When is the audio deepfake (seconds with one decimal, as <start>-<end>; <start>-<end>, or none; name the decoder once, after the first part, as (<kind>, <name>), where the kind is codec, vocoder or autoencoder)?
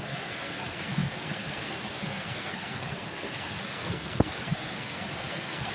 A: 0.0-5.7 (codec, SNAC)